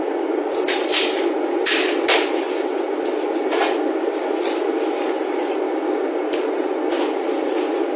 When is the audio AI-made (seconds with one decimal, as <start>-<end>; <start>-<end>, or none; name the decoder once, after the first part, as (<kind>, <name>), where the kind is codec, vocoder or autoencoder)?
none